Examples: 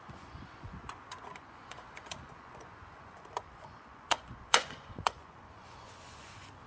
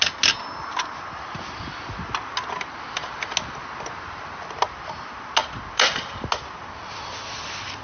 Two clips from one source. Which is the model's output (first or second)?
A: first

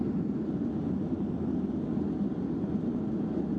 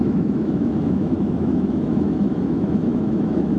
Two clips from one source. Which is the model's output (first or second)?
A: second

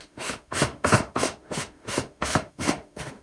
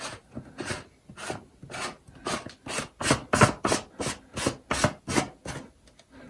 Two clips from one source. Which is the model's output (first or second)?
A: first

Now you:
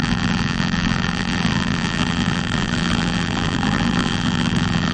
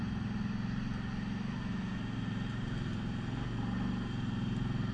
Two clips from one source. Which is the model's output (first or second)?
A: first